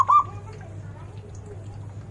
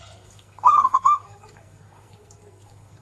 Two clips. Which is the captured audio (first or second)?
first